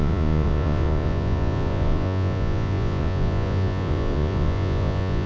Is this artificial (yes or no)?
yes